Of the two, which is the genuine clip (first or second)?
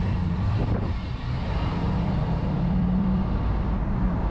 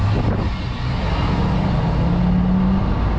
second